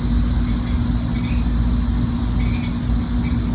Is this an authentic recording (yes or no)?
yes